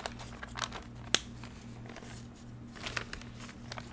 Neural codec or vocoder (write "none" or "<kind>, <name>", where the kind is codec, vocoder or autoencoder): none